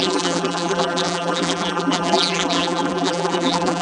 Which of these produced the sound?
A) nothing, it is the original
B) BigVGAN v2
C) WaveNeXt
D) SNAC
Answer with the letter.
B